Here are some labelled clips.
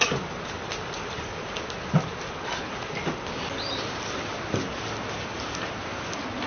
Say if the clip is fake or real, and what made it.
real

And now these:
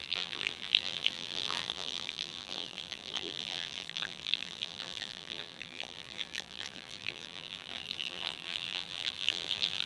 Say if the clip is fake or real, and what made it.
fake, vocoder, BigVGAN v2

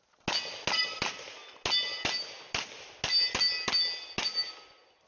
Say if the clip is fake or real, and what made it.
real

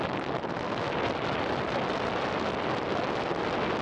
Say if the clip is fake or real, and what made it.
real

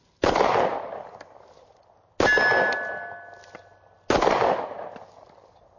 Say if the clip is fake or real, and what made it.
real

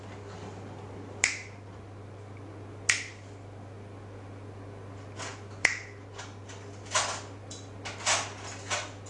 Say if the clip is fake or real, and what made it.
real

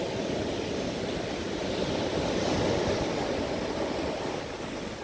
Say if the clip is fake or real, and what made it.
real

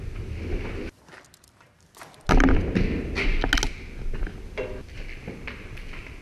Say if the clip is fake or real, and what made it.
real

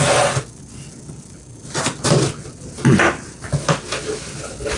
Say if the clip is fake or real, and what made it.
real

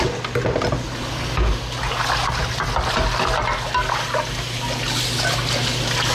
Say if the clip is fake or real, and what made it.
real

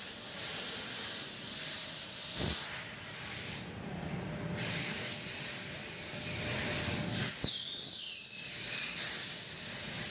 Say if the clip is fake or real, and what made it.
fake, vocoder, BigVGAN v2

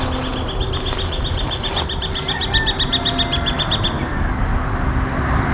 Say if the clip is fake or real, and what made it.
real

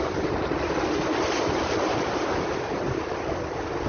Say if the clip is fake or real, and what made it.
real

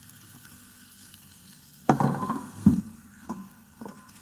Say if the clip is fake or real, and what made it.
fake, codec, SNAC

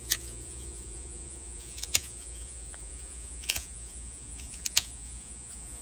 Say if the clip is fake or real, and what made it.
fake, vocoder, Vocos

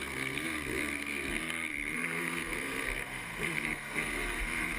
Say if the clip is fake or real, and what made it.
fake, codec, SNAC